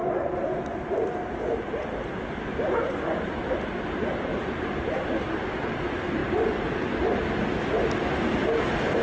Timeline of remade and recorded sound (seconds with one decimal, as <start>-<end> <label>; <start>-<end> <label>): 0.0-4.3 recorded; 4.3-5.1 remade; 5.1-6.2 recorded; 6.2-6.9 remade; 6.9-9.0 recorded